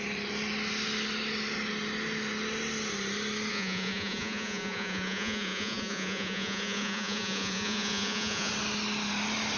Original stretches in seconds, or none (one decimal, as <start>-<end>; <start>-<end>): 0.0-3.5; 8.5-9.6